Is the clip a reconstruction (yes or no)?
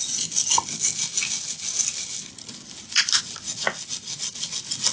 no